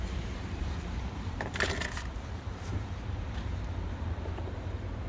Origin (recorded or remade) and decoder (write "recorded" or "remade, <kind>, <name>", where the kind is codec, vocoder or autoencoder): remade, vocoder, BigVGAN v2